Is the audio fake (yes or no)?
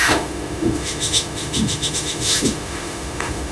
yes